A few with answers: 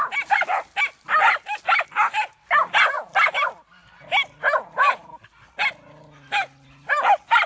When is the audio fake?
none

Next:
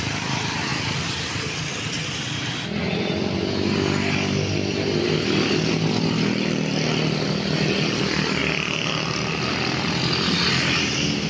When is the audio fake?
none

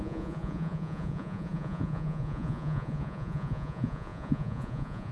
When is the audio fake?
0.0-5.1 (vocoder, Vocos)

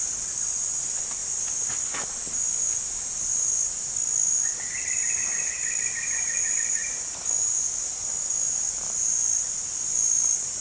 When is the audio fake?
none

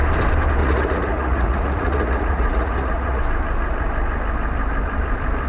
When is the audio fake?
0.6-3.2 (vocoder, Vocos)

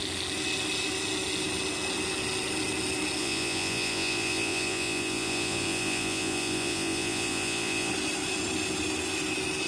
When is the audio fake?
3.2-7.9 (vocoder, Vocos)

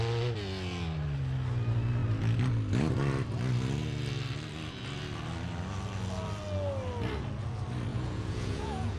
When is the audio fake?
7.9-9.0 (vocoder, Vocos)